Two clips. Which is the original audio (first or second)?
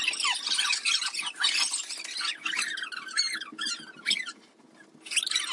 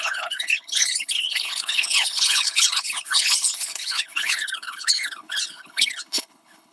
first